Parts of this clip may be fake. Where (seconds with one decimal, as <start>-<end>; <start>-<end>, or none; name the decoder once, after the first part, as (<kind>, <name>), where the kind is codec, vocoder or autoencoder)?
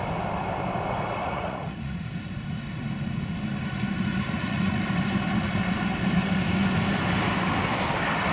1.2-2.1 (vocoder, Vocos); 4.1-4.8